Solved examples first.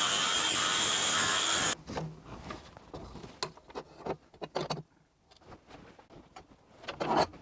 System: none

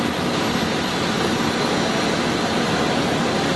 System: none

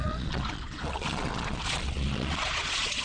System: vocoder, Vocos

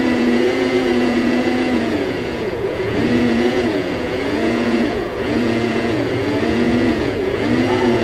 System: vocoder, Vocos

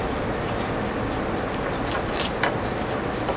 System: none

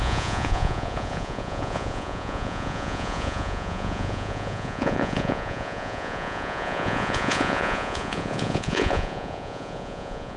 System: vocoder, Vocos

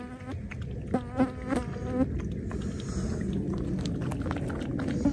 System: none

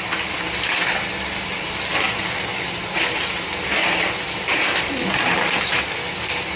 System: none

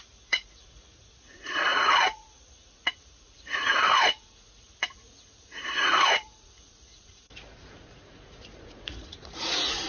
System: vocoder, Vocos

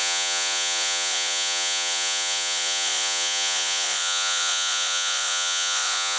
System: vocoder, Vocos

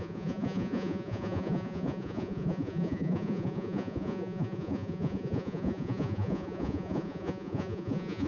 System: vocoder, Vocos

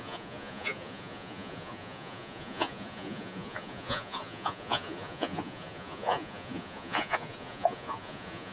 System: vocoder, Vocos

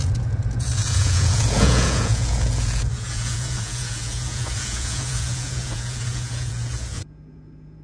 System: vocoder, Vocos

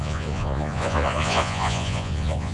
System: vocoder, Vocos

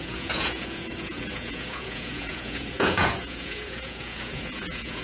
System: vocoder, Vocos